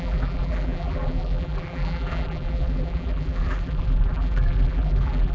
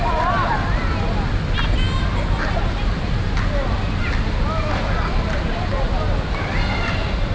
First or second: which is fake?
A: first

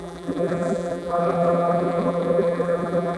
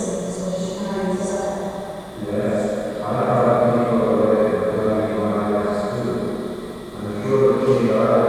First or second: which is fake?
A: first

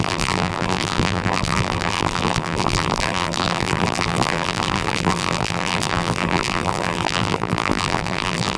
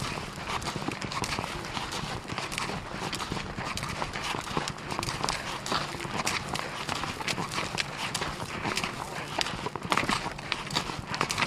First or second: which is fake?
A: first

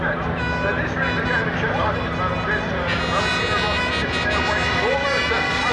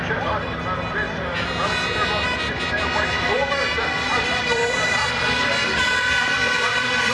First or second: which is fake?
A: second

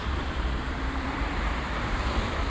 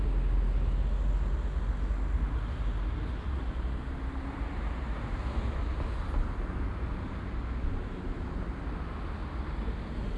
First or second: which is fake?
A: first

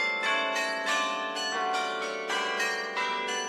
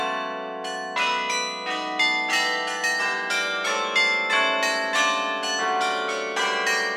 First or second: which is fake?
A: first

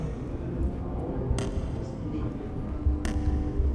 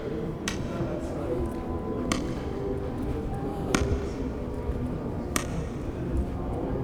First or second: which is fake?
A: second